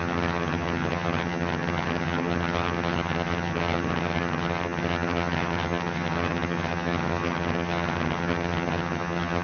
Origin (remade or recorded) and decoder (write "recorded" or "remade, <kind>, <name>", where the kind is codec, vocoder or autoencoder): remade, vocoder, HiFi-GAN